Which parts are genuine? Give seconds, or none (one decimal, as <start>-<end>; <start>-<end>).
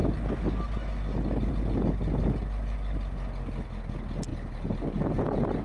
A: 0.0-5.6